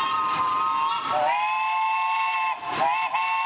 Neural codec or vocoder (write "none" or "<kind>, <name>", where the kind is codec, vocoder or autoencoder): none